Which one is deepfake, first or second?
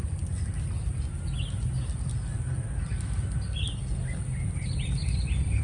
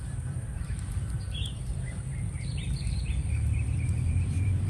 second